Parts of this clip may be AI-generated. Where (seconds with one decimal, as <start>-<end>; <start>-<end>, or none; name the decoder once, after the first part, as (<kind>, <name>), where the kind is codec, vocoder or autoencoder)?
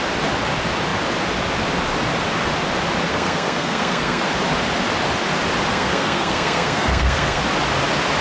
3.1-4.2 (codec, SNAC); 5.7-7.4